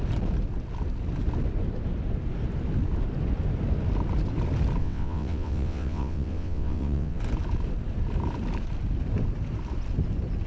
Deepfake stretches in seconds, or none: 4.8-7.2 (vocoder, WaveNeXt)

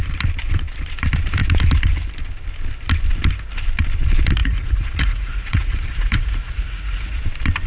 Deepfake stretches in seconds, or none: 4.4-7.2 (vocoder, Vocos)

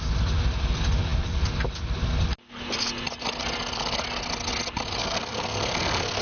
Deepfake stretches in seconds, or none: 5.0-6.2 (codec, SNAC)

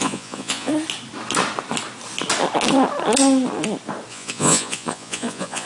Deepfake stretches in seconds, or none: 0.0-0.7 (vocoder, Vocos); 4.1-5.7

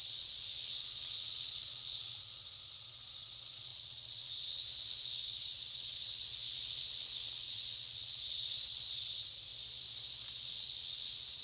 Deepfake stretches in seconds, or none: 0.0-9.5 (vocoder, WaveNeXt); 10.4-11.4

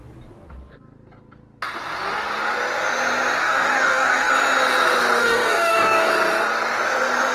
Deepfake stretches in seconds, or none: 3.4-4.3 (codec, DAC); 5.2-6.1

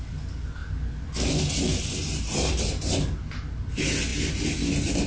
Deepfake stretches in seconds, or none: none

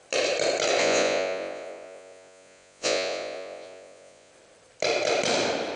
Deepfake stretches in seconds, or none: 0.8-4.3 (vocoder, Vocos)